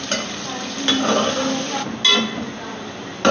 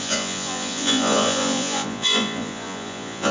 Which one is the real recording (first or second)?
first